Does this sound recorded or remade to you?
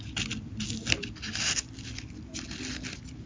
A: recorded